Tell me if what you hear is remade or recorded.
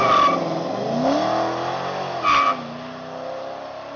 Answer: recorded